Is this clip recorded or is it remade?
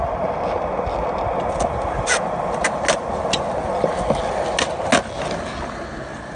recorded